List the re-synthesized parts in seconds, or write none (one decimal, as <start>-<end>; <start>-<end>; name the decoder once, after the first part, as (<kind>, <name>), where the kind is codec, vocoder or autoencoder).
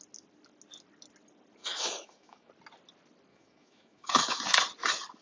1.6-2.5 (autoencoder, DAC-VAE); 3.3-4.4